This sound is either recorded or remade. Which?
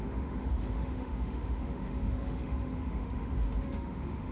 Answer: remade